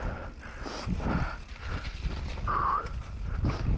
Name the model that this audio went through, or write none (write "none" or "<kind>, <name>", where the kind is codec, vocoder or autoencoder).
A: none